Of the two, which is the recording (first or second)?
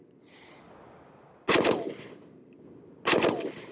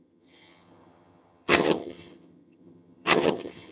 first